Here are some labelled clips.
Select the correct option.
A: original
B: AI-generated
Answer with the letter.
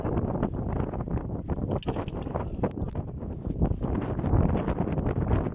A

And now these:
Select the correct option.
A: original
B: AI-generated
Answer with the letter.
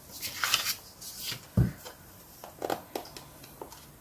A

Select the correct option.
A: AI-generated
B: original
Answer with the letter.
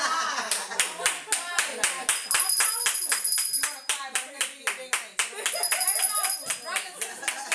B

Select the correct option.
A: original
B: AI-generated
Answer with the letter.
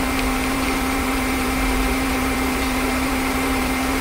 B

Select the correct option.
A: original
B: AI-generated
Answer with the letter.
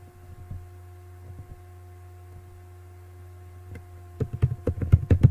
A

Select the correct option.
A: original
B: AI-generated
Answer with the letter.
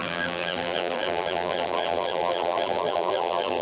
B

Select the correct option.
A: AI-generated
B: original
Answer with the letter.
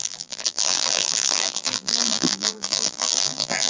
A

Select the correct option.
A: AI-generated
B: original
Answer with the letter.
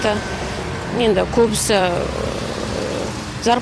A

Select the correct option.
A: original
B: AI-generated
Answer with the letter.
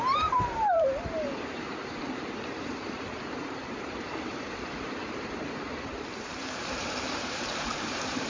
B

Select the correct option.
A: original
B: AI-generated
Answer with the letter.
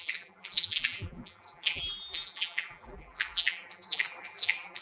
B